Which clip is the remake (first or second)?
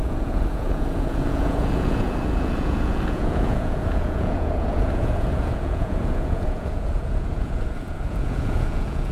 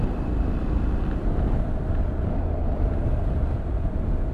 first